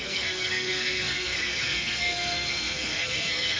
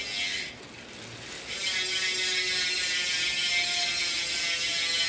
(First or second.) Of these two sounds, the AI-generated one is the first